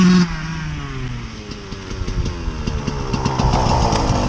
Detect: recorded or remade recorded